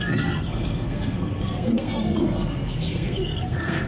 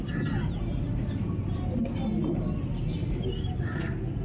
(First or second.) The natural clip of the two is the second